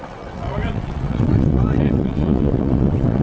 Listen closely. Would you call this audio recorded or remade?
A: remade